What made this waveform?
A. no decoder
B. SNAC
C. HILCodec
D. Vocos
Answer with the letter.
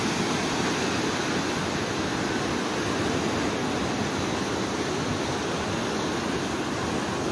A